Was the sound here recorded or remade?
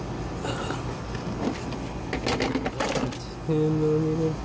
recorded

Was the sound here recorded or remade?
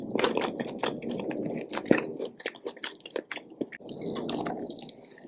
remade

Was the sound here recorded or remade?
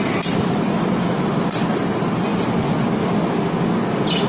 recorded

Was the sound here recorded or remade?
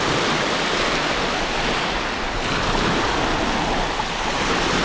recorded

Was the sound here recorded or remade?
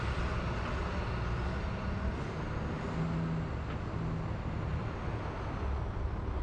recorded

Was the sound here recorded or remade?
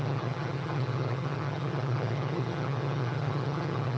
remade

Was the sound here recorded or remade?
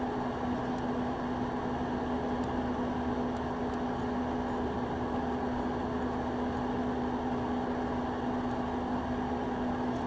recorded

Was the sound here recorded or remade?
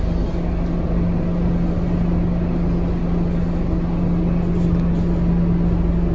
recorded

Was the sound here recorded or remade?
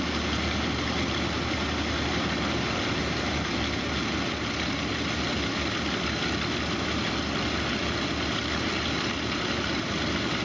recorded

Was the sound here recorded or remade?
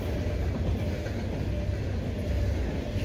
recorded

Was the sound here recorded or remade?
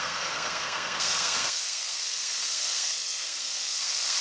remade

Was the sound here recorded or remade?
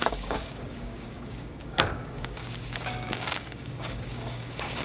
remade